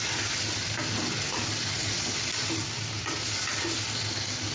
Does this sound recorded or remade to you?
recorded